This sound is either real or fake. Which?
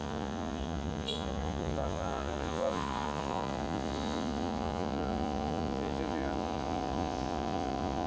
fake